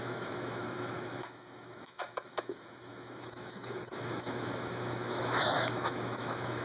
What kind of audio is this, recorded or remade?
remade